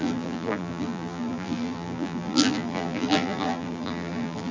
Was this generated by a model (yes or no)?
yes